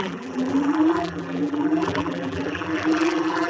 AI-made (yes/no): yes